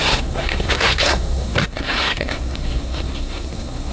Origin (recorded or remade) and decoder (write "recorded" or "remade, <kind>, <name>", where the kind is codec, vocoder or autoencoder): remade, codec, SNAC